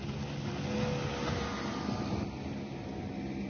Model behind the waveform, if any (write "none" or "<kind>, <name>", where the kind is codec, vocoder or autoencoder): none